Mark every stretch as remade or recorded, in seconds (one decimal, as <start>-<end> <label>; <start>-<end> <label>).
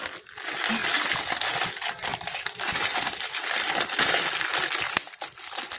0.0-0.8 recorded; 0.8-1.7 remade; 1.7-2.1 recorded; 2.1-4.7 remade; 4.7-5.8 recorded